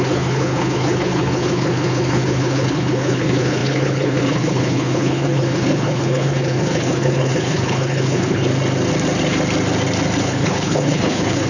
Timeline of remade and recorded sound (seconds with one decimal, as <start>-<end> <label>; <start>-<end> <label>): 0.0-8.5 remade; 8.5-10.2 recorded; 10.2-11.5 remade